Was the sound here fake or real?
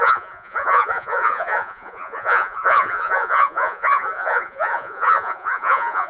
fake